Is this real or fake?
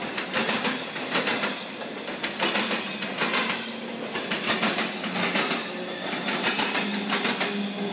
real